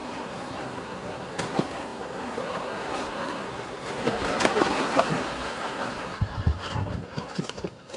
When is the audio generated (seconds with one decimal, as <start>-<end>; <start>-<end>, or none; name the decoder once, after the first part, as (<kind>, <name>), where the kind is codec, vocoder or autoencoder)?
0.0-8.0 (codec, SNAC)